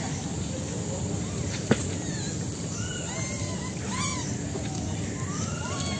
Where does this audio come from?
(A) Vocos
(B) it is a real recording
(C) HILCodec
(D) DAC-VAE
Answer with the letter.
B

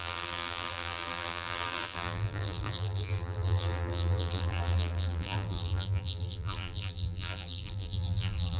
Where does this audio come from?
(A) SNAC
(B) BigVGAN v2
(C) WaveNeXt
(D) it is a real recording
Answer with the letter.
B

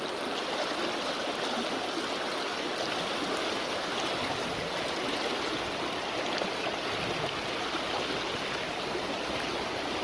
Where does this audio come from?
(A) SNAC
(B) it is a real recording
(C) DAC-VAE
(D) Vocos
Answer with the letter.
B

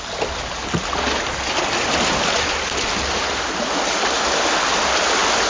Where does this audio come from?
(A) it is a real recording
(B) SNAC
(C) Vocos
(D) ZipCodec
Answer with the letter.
A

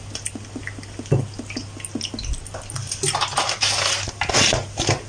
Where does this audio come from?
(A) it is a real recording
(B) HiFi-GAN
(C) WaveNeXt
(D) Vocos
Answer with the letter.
A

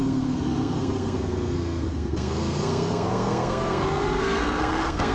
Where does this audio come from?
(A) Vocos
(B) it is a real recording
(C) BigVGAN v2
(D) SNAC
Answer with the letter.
D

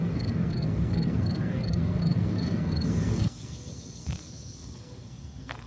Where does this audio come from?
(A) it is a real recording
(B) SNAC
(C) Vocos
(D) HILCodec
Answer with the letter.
B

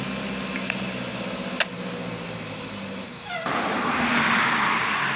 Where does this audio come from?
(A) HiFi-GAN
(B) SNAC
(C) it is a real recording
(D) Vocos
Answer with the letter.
C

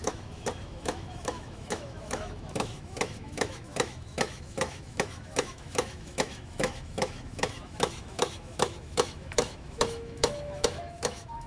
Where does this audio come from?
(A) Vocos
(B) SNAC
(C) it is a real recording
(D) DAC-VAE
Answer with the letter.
D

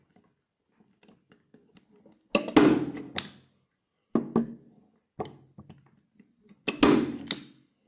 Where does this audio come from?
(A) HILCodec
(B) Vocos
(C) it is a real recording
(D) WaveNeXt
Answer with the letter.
C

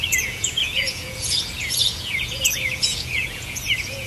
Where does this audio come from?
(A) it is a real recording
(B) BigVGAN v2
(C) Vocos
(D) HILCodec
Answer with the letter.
C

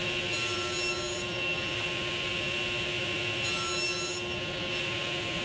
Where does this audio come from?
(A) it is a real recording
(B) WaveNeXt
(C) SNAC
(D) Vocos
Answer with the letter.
A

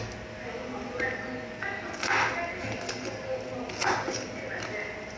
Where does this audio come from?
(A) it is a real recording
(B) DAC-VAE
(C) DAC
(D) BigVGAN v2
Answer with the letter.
A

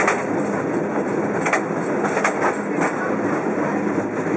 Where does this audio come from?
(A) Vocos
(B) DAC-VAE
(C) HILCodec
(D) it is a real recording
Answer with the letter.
D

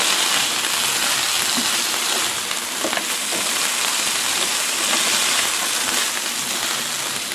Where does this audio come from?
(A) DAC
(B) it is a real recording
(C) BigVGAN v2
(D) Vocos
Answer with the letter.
B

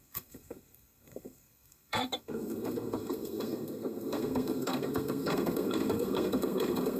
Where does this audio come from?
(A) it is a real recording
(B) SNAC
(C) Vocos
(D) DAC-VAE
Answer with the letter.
B